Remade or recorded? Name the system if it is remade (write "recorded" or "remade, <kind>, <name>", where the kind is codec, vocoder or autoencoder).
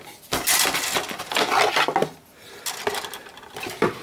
recorded